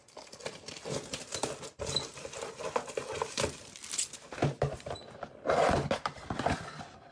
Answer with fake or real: real